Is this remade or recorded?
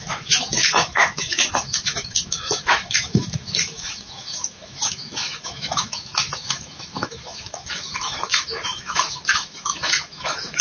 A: remade